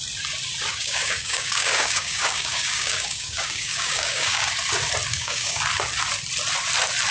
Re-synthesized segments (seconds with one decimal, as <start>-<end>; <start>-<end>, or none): 0.7-4.5; 5.1-5.6